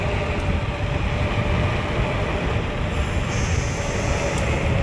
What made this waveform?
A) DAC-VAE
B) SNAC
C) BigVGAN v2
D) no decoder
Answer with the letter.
D